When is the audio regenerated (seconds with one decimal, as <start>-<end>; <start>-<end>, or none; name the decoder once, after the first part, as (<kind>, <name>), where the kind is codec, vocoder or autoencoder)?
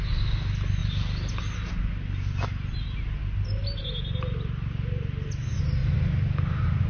none